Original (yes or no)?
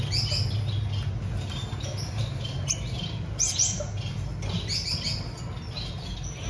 yes